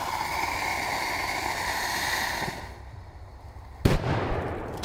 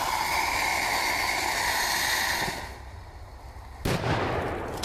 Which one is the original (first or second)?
second